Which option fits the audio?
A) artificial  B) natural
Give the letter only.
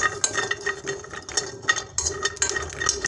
B